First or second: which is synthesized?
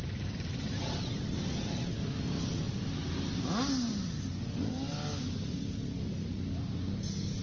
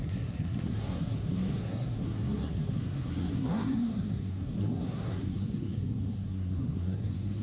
second